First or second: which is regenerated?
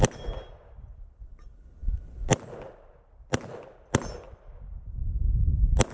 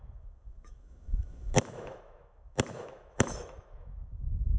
second